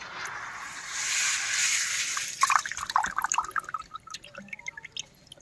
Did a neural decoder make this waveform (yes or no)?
no